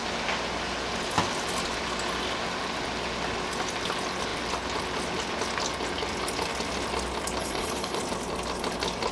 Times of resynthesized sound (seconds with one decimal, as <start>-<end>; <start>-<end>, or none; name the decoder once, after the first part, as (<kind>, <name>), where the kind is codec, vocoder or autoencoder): 7.4-8.0 (vocoder, Vocos)